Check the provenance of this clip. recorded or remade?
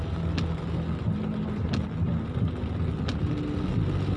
recorded